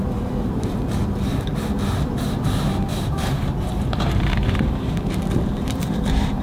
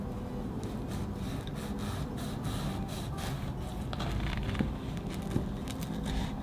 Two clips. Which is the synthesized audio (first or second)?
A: first